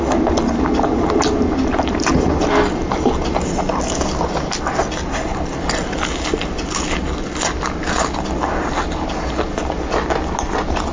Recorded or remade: recorded